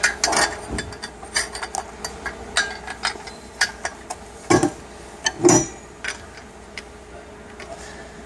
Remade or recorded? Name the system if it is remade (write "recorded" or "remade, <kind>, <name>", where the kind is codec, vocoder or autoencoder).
recorded